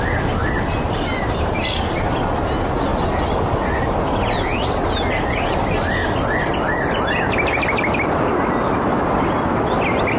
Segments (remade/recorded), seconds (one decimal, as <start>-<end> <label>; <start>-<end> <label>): 0.0-10.2 recorded